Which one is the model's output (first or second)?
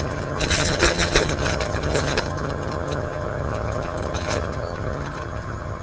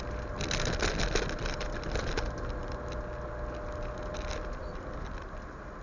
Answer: first